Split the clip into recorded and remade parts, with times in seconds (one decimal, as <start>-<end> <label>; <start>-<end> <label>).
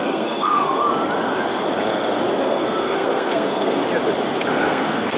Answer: 0.0-0.8 remade; 0.8-2.4 recorded; 2.4-3.8 remade; 3.8-4.5 recorded; 4.5-5.2 remade